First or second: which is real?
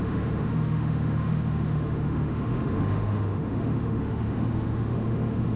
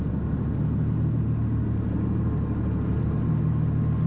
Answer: second